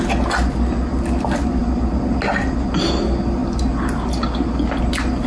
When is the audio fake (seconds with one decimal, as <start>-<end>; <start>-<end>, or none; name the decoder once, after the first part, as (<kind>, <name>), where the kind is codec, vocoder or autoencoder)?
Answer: none